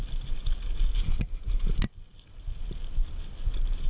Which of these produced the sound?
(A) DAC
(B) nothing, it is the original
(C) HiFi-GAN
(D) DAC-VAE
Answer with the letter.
B